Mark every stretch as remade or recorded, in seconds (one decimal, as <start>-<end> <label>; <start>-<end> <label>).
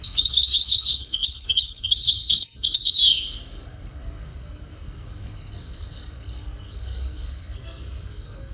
0.0-8.5 remade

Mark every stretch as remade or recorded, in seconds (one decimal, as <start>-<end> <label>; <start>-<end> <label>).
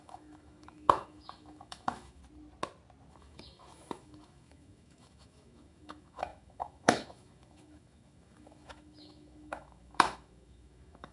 0.0-2.2 remade; 2.2-3.1 recorded; 3.1-11.1 remade